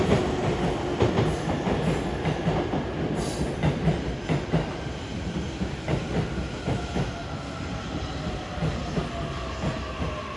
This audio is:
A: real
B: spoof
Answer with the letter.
A